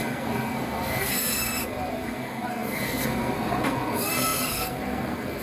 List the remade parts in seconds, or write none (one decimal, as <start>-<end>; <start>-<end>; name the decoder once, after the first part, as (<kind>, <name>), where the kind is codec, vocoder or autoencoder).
0.0-5.4 (codec, SNAC)